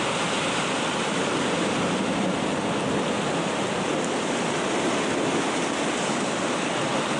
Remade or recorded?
recorded